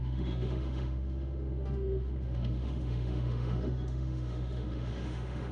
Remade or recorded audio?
remade